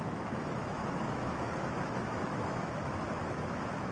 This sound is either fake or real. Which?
fake